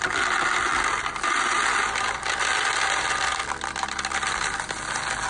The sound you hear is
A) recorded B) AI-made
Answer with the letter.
A